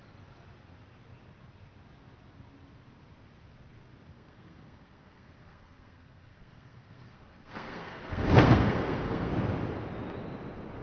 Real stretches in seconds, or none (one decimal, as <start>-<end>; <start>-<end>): 0.0-4.1; 9.3-10.8